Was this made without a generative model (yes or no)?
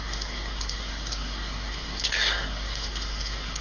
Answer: no